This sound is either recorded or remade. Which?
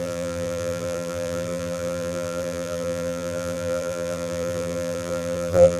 remade